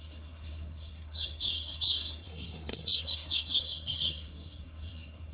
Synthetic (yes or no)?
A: yes